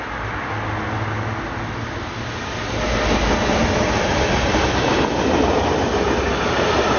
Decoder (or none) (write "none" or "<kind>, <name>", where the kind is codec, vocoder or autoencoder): none